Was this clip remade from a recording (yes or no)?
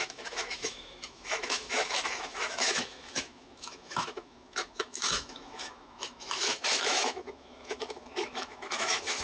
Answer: yes